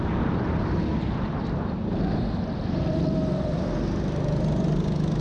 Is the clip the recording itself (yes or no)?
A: yes